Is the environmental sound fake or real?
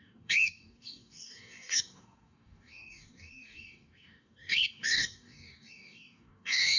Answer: fake